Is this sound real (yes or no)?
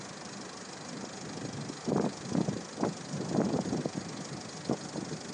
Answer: yes